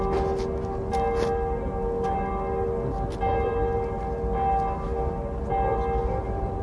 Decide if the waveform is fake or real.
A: real